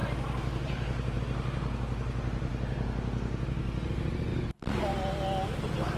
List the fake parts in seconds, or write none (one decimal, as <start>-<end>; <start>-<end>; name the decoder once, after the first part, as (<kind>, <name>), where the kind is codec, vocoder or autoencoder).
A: 0.0-1.2 (vocoder, BigVGAN v2)